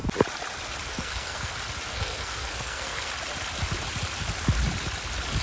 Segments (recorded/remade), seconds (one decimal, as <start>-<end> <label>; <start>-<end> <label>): 0.0-0.9 recorded; 0.9-1.5 remade; 1.5-1.9 recorded; 1.9-3.1 remade; 3.1-5.4 recorded